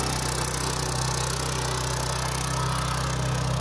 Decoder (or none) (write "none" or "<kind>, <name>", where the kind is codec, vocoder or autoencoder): none